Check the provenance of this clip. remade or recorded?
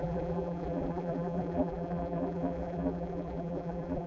remade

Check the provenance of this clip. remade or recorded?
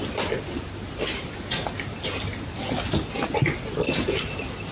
recorded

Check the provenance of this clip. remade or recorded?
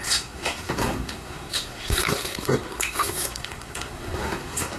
remade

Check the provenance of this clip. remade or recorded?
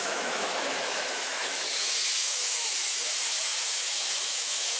remade